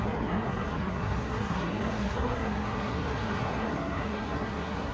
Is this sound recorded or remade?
remade